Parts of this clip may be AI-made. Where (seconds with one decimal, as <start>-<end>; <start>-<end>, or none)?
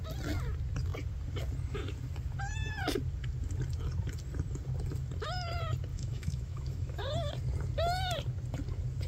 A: 5.9-7.0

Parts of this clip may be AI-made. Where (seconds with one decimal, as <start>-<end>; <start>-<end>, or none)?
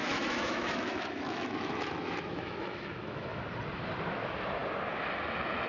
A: 0.0-3.4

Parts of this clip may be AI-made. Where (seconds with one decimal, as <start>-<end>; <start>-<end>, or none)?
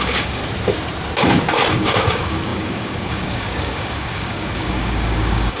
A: 0.0-0.4; 1.7-5.6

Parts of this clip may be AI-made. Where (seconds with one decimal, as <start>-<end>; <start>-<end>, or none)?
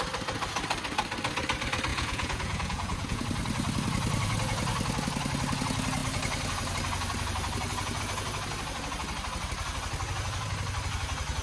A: 1.9-3.2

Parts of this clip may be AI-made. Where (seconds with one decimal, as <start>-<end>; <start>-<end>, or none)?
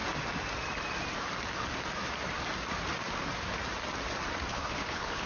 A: 4.5-5.3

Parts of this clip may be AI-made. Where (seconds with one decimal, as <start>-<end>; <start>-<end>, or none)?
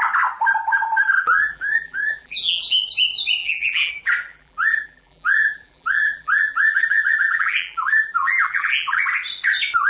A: 1.1-2.8; 3.4-3.9; 4.3-9.0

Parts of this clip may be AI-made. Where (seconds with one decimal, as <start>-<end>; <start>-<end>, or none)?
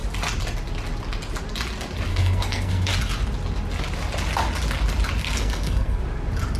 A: 2.1-2.9; 5.2-6.0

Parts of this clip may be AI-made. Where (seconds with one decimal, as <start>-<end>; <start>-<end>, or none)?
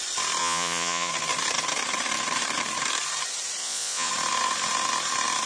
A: 0.4-1.1; 3.6-4.1